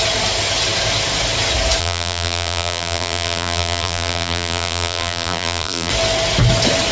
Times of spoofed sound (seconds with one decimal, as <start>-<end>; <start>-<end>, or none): 1.8-5.9

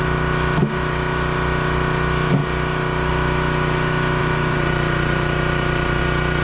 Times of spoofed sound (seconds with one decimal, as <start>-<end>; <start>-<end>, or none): 4.2-6.0